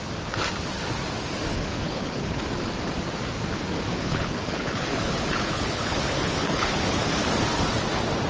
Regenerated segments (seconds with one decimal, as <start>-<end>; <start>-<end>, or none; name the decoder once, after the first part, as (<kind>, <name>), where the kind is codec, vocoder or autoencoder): 1.5-2.4 (codec, HILCodec); 3.9-7.0